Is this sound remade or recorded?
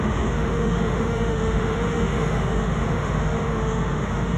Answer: remade